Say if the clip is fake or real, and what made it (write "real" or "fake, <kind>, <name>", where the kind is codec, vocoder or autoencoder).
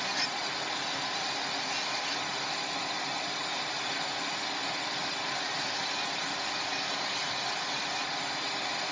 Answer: real